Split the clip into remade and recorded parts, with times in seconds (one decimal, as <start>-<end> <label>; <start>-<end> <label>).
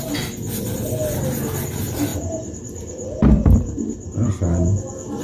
0.0-2.1 recorded; 2.1-4.3 remade; 4.3-5.2 recorded